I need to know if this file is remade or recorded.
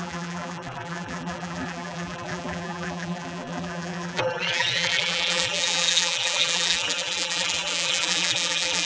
remade